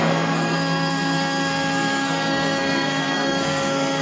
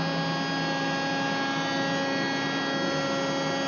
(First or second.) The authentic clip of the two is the second